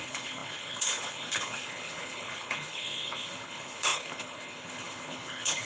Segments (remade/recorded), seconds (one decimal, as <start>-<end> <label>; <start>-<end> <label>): 0.0-5.6 remade